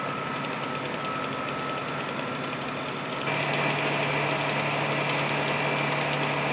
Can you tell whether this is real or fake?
real